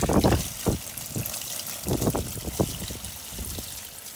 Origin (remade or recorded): recorded